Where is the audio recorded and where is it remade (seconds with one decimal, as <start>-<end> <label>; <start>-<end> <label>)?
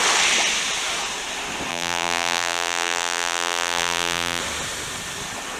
0.0-1.7 recorded; 1.7-4.4 remade; 4.4-5.6 recorded